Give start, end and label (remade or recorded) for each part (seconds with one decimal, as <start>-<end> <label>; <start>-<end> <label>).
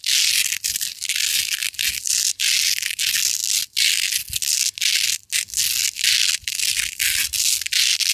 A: 0.0-8.1 recorded